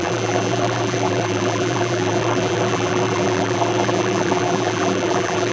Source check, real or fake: fake